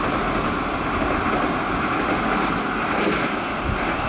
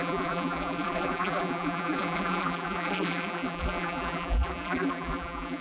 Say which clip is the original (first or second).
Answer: first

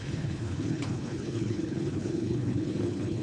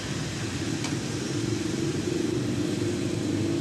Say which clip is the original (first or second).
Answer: second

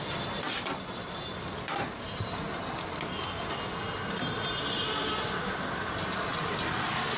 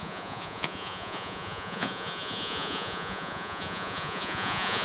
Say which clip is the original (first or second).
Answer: first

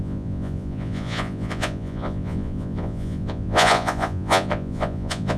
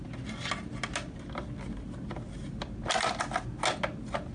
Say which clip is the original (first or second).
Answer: second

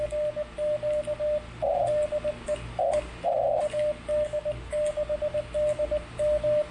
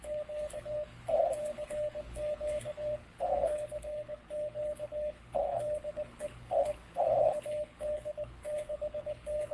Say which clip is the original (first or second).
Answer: first